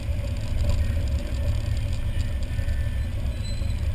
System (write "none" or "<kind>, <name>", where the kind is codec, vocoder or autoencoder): none